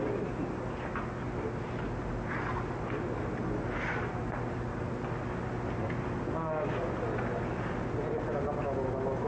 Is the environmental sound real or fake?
real